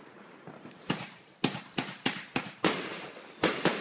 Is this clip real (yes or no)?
no